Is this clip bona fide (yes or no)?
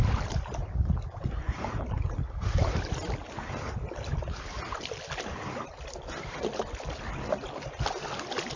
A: yes